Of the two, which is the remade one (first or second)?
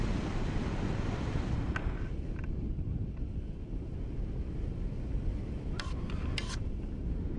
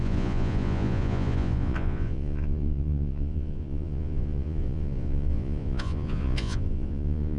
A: second